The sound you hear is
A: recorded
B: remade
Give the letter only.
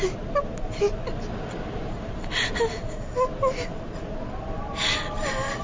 A